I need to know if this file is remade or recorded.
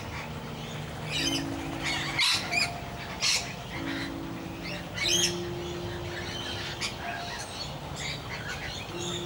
recorded